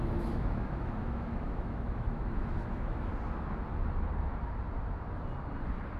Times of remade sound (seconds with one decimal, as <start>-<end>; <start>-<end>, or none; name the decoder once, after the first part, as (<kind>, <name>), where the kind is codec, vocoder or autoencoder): 0.0-3.1 (autoencoder, DAC-VAE)